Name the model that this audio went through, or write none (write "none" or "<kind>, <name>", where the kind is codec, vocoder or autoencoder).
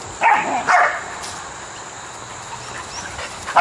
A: none